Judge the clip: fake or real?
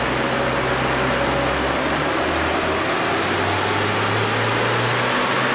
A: real